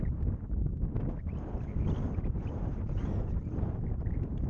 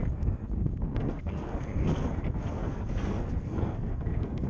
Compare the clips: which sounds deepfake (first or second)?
second